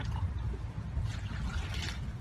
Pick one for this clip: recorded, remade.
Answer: recorded